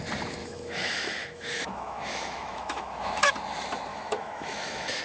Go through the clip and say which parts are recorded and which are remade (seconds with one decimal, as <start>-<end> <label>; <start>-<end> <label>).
0.0-0.4 recorded; 0.4-3.3 remade; 3.3-3.9 recorded; 3.9-5.0 remade